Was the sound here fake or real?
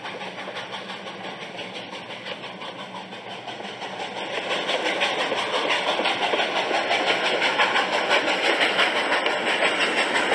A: real